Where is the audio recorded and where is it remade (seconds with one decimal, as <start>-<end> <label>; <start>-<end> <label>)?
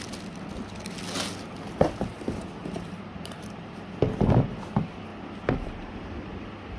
0.0-2.6 recorded; 2.6-3.9 remade; 3.9-6.8 recorded